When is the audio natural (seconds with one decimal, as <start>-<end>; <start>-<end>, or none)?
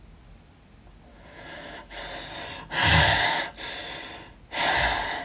0.0-1.1; 2.0-2.8; 3.4-5.2